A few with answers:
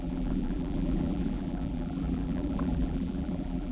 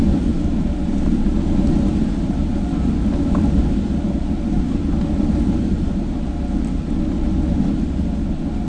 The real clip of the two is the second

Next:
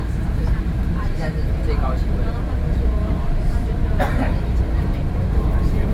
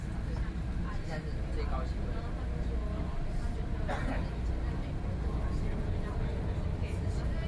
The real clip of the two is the second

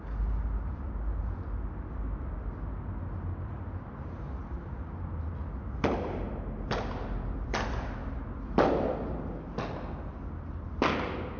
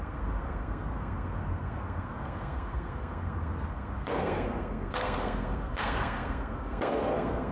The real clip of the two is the first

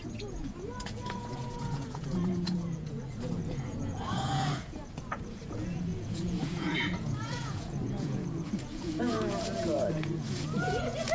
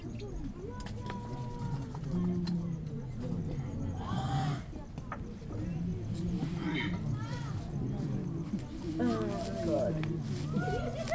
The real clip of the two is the second